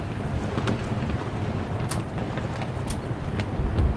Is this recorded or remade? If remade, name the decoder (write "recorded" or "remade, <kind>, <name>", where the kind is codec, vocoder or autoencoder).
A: recorded